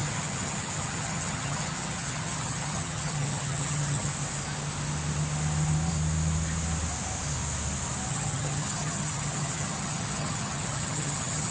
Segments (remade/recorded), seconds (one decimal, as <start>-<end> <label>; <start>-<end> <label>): 0.0-4.1 remade; 4.1-8.1 recorded; 8.1-11.5 remade